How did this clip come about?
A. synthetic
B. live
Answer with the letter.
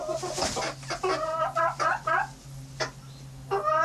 B